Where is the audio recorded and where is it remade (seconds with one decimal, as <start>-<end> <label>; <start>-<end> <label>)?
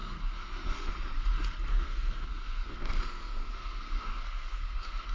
0.0-0.9 remade; 0.9-1.7 recorded; 1.7-5.1 remade